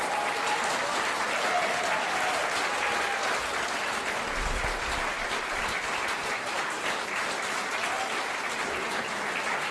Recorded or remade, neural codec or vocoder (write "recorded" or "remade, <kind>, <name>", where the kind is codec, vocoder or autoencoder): recorded